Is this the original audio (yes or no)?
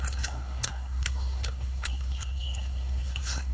no